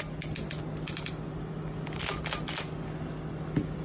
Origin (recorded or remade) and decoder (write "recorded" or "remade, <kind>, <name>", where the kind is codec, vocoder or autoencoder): recorded